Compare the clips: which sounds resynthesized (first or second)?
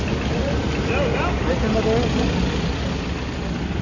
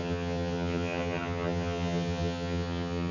second